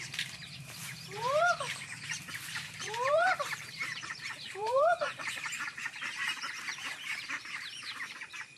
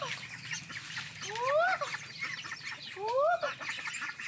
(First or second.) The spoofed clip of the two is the first